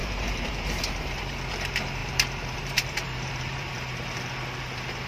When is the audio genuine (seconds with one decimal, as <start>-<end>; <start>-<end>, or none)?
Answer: 1.2-2.0; 3.7-5.1